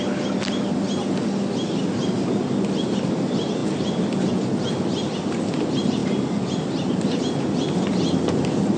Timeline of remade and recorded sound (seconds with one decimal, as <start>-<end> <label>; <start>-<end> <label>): 0.0-8.8 recorded